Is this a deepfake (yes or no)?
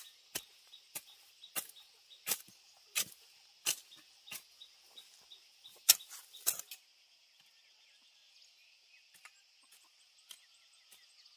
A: no